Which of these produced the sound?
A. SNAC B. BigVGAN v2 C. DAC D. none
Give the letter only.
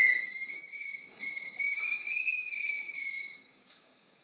C